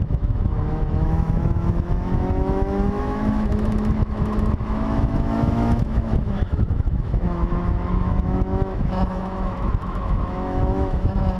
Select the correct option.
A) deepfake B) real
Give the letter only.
A